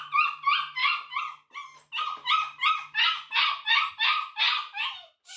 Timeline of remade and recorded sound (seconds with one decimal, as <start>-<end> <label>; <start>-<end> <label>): 0.0-5.4 recorded